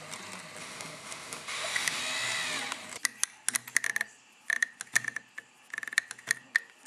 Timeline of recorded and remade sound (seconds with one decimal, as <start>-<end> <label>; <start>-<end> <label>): 0.0-0.6 recorded; 0.6-2.0 remade; 2.0-6.9 recorded